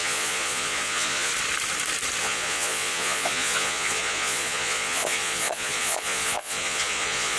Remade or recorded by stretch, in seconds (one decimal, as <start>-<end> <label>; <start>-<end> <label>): 0.0-1.3 remade; 1.3-2.2 recorded; 2.2-7.4 remade